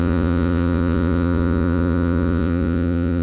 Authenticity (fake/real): fake